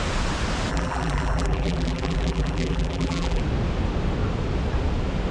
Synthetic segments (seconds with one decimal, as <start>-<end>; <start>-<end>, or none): 0.7-3.4